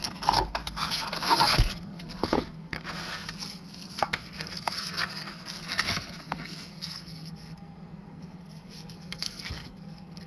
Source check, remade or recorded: remade